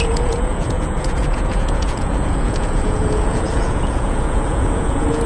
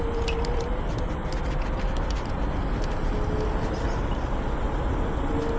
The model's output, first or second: first